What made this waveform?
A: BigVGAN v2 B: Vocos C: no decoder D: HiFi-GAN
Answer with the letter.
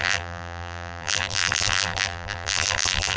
A